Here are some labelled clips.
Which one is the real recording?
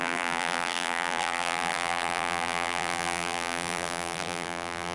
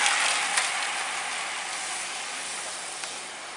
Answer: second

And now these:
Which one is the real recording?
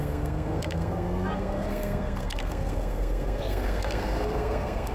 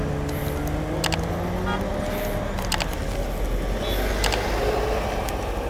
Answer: second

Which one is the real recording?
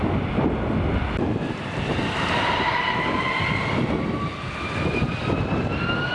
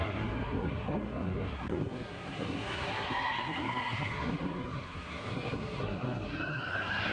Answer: first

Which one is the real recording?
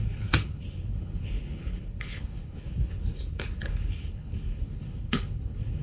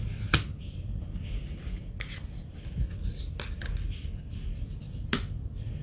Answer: second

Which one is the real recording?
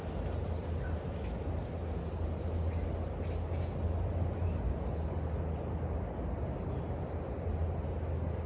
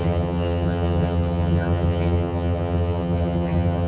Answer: first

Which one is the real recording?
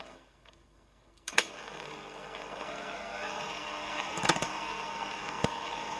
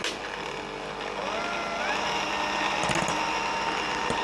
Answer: second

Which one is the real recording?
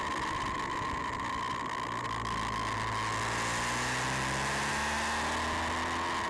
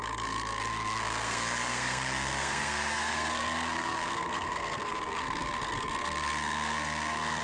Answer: first